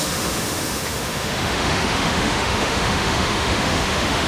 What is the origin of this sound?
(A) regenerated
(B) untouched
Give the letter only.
A